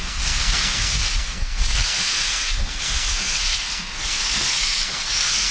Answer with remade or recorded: remade